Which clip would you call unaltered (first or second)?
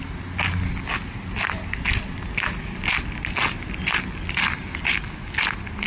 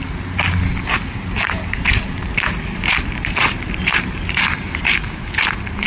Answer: first